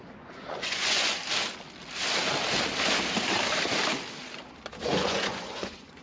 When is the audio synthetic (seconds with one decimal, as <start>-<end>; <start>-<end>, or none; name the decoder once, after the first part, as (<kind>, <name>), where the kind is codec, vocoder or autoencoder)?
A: 0.0-1.2 (vocoder, Vocos); 4.8-6.0